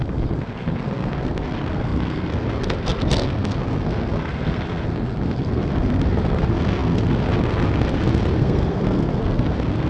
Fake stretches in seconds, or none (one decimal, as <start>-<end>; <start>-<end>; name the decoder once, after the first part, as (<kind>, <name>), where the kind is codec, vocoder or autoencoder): 0.0-9.9 (codec, SNAC)